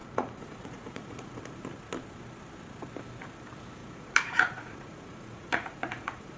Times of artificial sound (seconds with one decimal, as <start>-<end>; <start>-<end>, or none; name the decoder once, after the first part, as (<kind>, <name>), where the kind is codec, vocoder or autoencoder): 0.0-1.4 (vocoder, Vocos); 3.8-6.4